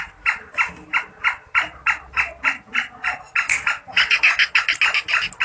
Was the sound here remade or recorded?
recorded